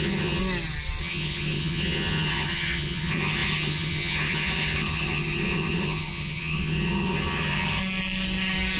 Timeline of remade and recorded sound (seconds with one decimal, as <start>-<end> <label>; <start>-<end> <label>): 0.0-0.4 remade; 0.4-1.0 recorded; 1.0-7.8 remade; 7.8-8.8 recorded